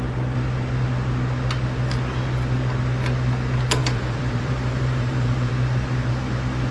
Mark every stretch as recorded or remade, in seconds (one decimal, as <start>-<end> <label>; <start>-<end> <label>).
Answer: 0.0-3.8 recorded; 3.8-5.5 remade; 5.5-6.7 recorded